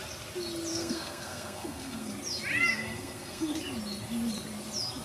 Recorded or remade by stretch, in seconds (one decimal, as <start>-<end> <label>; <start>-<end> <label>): 0.0-0.7 recorded; 0.7-2.1 remade; 2.1-2.7 recorded; 2.7-3.5 remade; 3.5-5.0 recorded